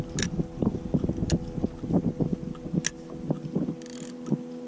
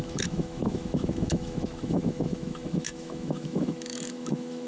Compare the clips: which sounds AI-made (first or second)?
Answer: second